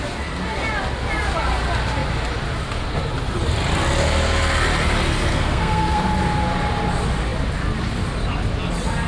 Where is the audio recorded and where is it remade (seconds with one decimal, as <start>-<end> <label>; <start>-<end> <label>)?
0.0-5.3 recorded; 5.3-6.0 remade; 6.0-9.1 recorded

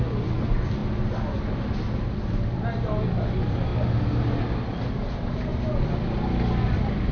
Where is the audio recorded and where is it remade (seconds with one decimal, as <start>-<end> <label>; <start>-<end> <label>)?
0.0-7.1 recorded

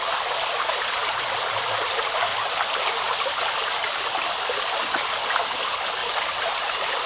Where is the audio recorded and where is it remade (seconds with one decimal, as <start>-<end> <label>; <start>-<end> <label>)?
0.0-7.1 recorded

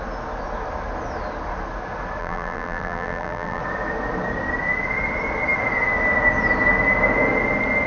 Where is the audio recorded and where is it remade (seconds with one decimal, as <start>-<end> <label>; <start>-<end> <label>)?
0.0-2.2 recorded; 2.2-3.6 remade; 3.6-7.9 recorded

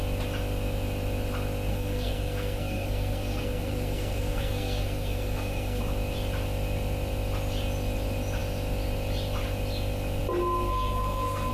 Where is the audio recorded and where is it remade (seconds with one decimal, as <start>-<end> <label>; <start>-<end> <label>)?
0.0-1.7 recorded; 1.7-5.8 remade; 5.8-10.7 recorded; 10.7-11.5 remade

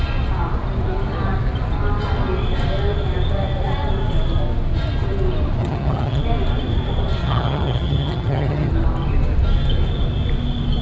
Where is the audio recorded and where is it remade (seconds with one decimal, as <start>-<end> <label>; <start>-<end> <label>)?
0.0-5.6 recorded; 5.6-6.2 remade; 6.2-7.2 recorded; 7.2-8.7 remade; 8.7-10.8 recorded

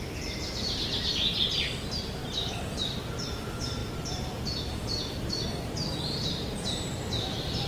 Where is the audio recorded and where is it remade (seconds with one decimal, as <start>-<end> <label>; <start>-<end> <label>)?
0.0-2.2 remade; 2.2-3.0 recorded; 3.0-7.7 remade

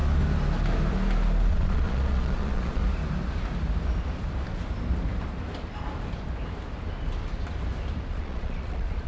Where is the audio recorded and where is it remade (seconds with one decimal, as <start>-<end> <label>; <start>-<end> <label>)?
0.0-1.5 recorded; 1.5-2.8 remade; 2.8-8.1 recorded; 8.1-9.1 remade